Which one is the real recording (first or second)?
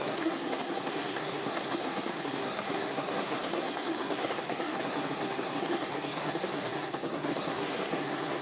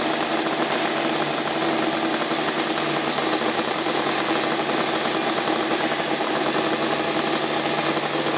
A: second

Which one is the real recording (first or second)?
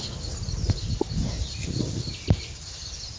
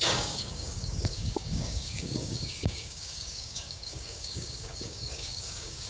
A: first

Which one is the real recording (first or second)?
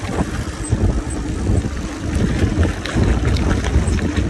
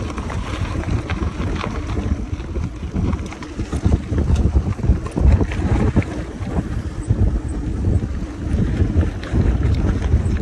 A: first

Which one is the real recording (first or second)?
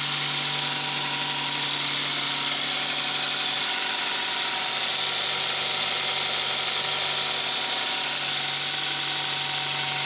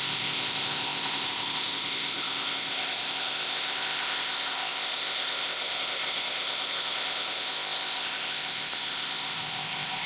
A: first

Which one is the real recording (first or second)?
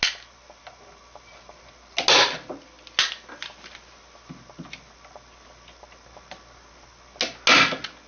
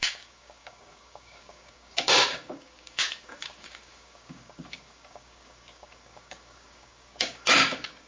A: first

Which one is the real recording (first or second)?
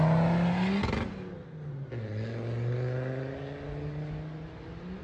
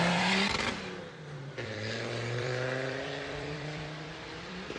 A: first